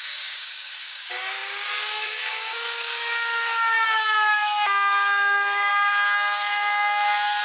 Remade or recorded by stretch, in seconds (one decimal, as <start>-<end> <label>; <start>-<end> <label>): 0.0-7.4 remade